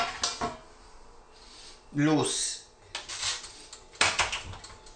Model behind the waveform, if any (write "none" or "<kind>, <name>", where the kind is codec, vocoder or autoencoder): none